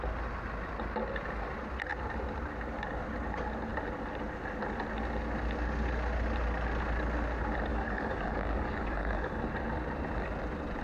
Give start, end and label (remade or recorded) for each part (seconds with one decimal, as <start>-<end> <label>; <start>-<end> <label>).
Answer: 0.0-7.7 recorded; 7.7-9.3 remade; 9.3-10.8 recorded